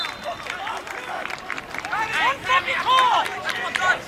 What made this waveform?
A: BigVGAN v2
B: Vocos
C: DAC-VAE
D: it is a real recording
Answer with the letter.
D